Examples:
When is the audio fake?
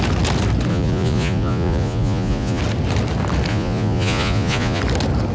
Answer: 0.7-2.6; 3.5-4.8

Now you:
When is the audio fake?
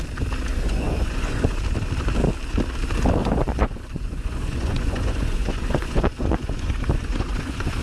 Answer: 0.5-1.6; 3.2-7.8